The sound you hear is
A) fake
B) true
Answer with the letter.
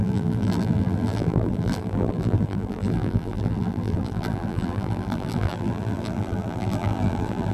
A